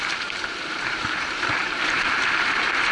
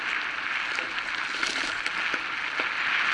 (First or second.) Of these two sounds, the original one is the second